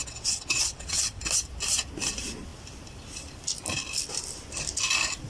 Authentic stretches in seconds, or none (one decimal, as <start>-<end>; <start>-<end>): 1.2-5.3